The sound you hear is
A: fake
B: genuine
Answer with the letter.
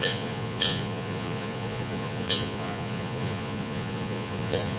A